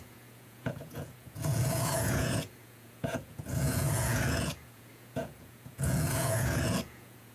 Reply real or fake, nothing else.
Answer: fake